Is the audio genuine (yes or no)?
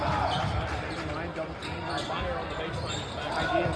yes